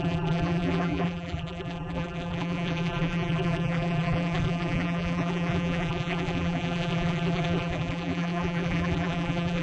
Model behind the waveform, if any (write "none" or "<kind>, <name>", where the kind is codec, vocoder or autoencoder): vocoder, BigVGAN v2